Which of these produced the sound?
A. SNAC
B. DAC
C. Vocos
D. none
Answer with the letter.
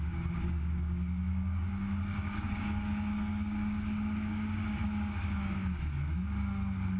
B